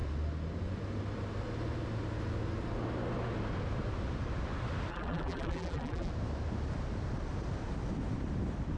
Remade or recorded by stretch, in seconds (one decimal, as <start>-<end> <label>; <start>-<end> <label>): 0.0-4.9 recorded; 4.9-6.1 remade; 6.1-8.8 recorded